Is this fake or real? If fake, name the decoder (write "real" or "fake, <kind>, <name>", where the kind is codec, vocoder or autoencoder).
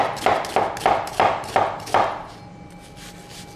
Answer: real